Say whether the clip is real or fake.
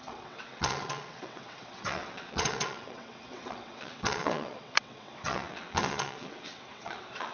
fake